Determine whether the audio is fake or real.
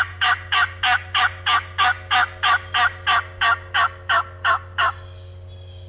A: real